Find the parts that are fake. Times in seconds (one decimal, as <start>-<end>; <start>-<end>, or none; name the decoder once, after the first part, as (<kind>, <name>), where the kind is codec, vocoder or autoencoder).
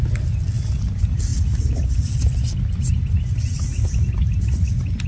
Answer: none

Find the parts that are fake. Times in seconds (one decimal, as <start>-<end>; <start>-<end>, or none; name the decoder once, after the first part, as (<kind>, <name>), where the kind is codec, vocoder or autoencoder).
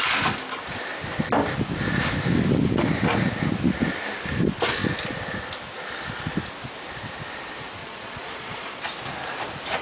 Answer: 7.8-8.8 (vocoder, Vocos)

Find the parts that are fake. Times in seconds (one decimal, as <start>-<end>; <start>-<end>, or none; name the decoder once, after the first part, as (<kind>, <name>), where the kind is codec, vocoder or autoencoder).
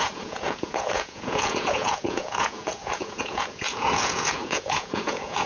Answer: 0.0-5.5 (vocoder, Vocos)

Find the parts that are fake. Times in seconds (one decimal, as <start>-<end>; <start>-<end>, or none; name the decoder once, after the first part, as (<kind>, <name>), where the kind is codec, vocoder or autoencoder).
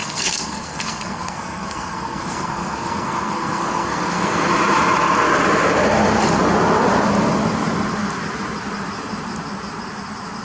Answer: 0.0-4.5 (codec, SNAC)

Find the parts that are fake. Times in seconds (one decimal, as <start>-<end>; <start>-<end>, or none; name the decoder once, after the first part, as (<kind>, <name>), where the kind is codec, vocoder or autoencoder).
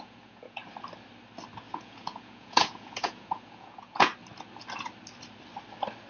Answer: 0.0-0.6 (vocoder, Vocos); 1.7-4.1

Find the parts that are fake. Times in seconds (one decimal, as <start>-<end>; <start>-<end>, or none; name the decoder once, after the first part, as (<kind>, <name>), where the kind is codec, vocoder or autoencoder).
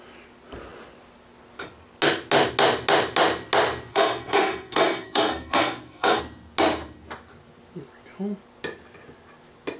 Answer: 3.9-6.2 (codec, SNAC)